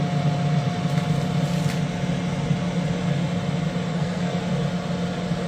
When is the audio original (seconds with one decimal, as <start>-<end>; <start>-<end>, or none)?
0.0-3.9; 4.4-5.5